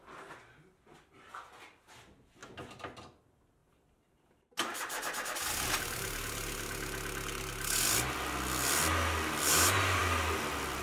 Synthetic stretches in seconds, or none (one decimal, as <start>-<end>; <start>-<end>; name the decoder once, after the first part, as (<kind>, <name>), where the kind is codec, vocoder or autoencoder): none